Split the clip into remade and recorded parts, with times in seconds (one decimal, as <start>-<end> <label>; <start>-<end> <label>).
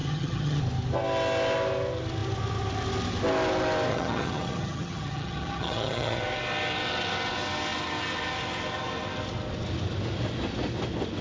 0.0-0.6 remade; 0.6-3.9 recorded; 3.9-6.2 remade; 6.2-11.2 recorded